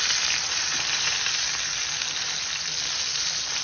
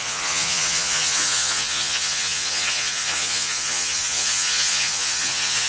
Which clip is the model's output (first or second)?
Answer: second